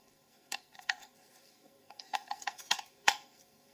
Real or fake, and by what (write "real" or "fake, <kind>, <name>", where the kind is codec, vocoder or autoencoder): fake, codec, SNAC